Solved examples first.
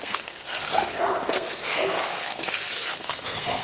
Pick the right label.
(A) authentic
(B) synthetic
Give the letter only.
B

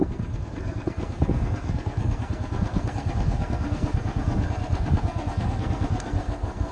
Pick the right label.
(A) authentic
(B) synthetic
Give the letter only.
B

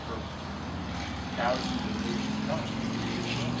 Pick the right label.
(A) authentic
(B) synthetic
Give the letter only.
A